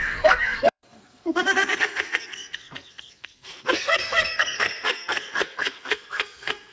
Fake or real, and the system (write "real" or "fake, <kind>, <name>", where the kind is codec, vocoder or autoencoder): fake, codec, SNAC